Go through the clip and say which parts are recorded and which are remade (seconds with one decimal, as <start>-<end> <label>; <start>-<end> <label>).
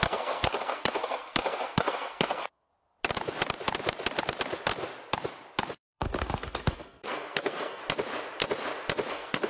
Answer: 0.0-2.7 remade; 2.7-5.7 recorded; 5.7-7.8 remade; 7.8-9.1 recorded; 9.1-9.5 remade